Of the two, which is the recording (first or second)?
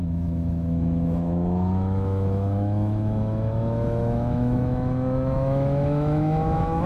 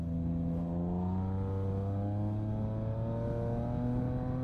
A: second